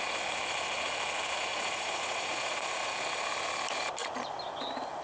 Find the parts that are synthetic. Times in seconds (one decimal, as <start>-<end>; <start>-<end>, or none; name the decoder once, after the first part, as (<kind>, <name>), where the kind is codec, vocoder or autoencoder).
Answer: 1.5-2.9 (vocoder, Vocos)